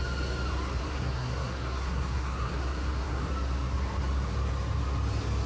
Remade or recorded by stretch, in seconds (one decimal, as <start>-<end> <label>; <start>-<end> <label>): 0.0-0.8 recorded; 0.8-3.3 remade; 3.3-5.5 recorded